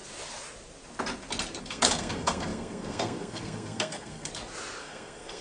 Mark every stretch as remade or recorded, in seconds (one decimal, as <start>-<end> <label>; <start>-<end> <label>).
0.0-1.6 recorded; 1.6-4.3 remade; 4.3-4.8 recorded; 4.8-5.4 remade